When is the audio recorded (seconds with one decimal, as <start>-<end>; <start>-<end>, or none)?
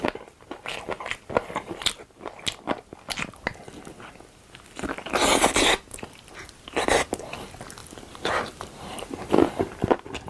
0.0-7.8; 9.3-10.3